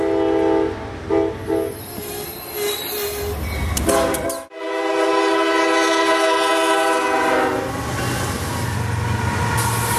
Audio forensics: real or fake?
real